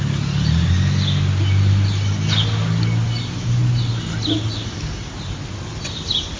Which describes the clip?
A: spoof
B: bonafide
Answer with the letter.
B